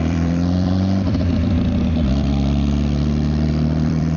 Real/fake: fake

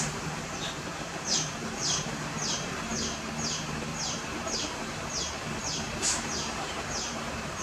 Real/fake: fake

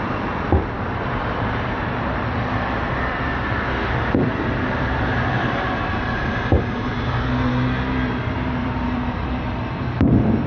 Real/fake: fake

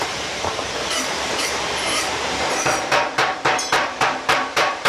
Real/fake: fake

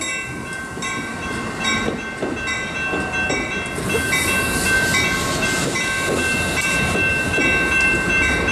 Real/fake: real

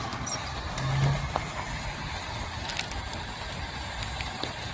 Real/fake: real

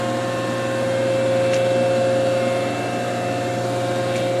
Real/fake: real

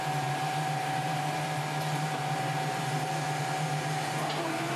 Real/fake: fake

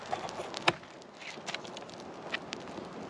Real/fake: real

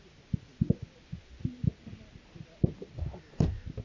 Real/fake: real